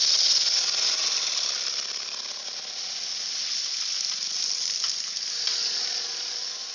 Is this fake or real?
real